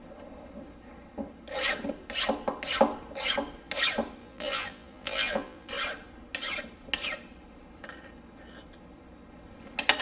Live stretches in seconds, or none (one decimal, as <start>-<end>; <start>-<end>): 0.0-4.2; 5.7-10.0